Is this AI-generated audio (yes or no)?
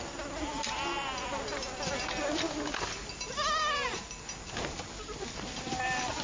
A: no